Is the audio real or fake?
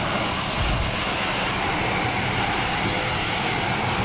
real